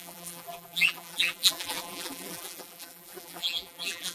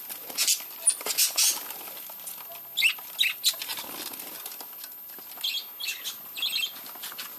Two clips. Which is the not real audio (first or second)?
first